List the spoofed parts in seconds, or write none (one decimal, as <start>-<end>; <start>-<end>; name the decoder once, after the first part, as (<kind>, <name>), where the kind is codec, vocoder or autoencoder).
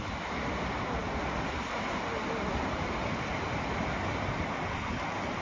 none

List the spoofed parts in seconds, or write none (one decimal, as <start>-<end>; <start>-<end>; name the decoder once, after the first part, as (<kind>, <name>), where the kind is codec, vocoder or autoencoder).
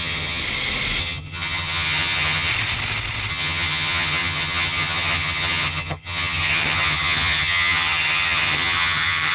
0.0-0.4 (vocoder, HiFi-GAN); 1.0-2.5; 3.3-9.3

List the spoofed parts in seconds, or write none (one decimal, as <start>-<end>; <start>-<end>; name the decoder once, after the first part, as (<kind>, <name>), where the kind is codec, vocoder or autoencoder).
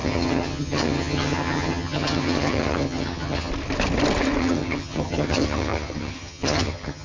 0.0-3.5 (vocoder, HiFi-GAN); 4.4-7.0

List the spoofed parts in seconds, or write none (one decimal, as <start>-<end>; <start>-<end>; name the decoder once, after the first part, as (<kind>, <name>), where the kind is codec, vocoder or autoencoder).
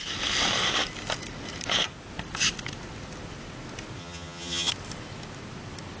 4.0-4.7 (vocoder, HiFi-GAN)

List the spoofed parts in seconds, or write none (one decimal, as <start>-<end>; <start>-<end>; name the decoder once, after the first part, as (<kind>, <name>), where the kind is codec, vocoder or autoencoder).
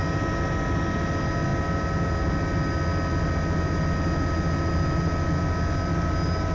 none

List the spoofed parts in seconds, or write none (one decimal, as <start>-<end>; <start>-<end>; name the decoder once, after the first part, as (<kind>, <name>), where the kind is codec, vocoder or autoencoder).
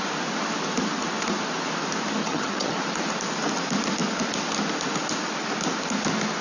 2.2-2.8 (vocoder, HiFi-GAN)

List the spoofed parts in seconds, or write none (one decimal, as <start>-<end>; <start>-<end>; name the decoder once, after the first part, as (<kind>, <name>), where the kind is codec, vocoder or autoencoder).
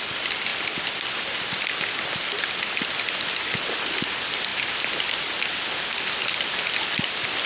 none